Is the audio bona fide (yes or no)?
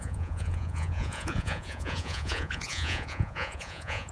no